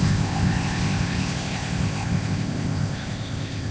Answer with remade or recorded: remade